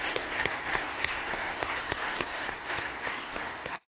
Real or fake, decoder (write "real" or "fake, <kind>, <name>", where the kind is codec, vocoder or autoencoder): fake, codec, SNAC